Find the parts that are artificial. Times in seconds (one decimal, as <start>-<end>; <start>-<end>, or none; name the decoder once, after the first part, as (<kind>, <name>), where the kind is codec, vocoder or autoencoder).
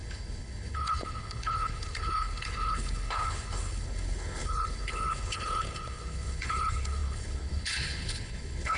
0.0-8.8 (codec, HILCodec)